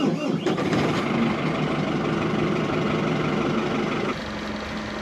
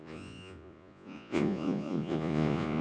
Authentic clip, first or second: first